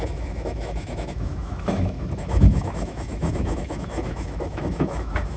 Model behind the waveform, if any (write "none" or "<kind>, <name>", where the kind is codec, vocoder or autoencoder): autoencoder, DAC-VAE